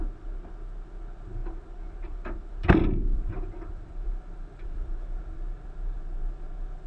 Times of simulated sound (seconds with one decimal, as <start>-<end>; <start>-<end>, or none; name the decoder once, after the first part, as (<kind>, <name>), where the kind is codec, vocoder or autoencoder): 1.4-5.2 (vocoder, BigVGAN v2)